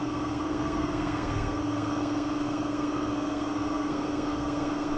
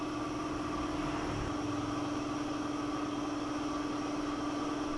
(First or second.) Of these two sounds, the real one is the second